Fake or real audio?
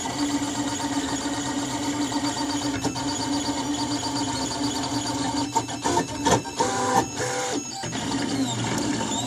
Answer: fake